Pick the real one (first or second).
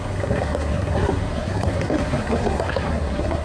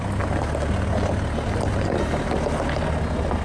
second